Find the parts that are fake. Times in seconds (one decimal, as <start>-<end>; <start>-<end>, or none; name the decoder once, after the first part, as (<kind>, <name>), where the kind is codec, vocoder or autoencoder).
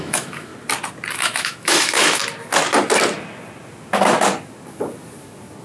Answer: 0.0-0.5 (autoencoder, DAC-VAE); 1.1-2.2